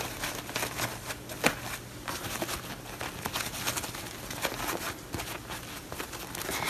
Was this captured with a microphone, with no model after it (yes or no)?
yes